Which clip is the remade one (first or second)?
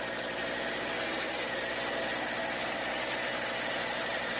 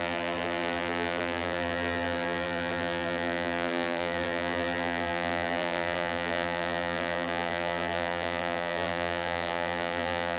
second